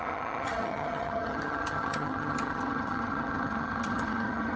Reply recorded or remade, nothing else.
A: remade